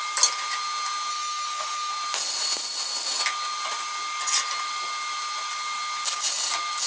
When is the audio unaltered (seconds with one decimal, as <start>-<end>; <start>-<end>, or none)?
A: 0.0-1.1; 1.9-6.9